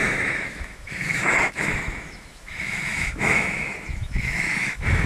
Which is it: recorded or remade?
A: remade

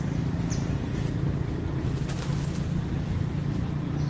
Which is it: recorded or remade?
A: recorded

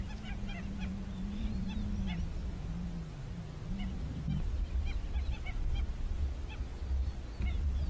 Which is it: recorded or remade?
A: recorded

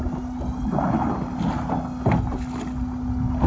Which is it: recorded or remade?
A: recorded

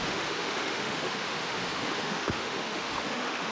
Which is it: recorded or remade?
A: remade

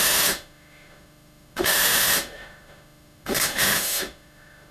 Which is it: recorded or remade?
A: remade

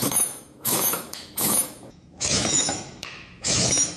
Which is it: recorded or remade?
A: remade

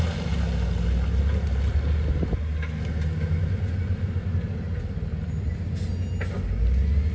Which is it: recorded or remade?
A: recorded